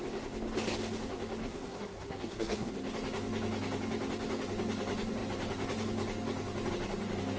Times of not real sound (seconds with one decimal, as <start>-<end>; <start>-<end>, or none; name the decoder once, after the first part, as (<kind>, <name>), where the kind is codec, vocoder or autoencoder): 1.4-2.7 (codec, SNAC)